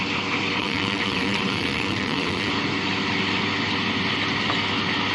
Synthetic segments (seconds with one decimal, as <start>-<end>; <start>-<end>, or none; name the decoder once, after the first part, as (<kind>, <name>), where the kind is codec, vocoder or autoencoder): 0.6-2.5 (vocoder, WaveNeXt)